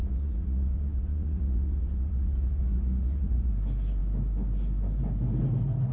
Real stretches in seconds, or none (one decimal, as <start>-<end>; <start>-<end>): 3.5-5.9